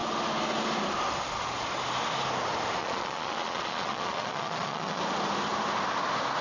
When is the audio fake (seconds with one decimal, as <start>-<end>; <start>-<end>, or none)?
2.8-5.0